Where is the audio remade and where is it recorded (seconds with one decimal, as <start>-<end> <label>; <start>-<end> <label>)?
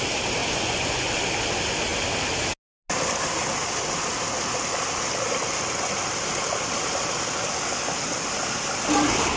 0.0-0.4 recorded; 0.4-1.1 remade; 1.1-9.4 recorded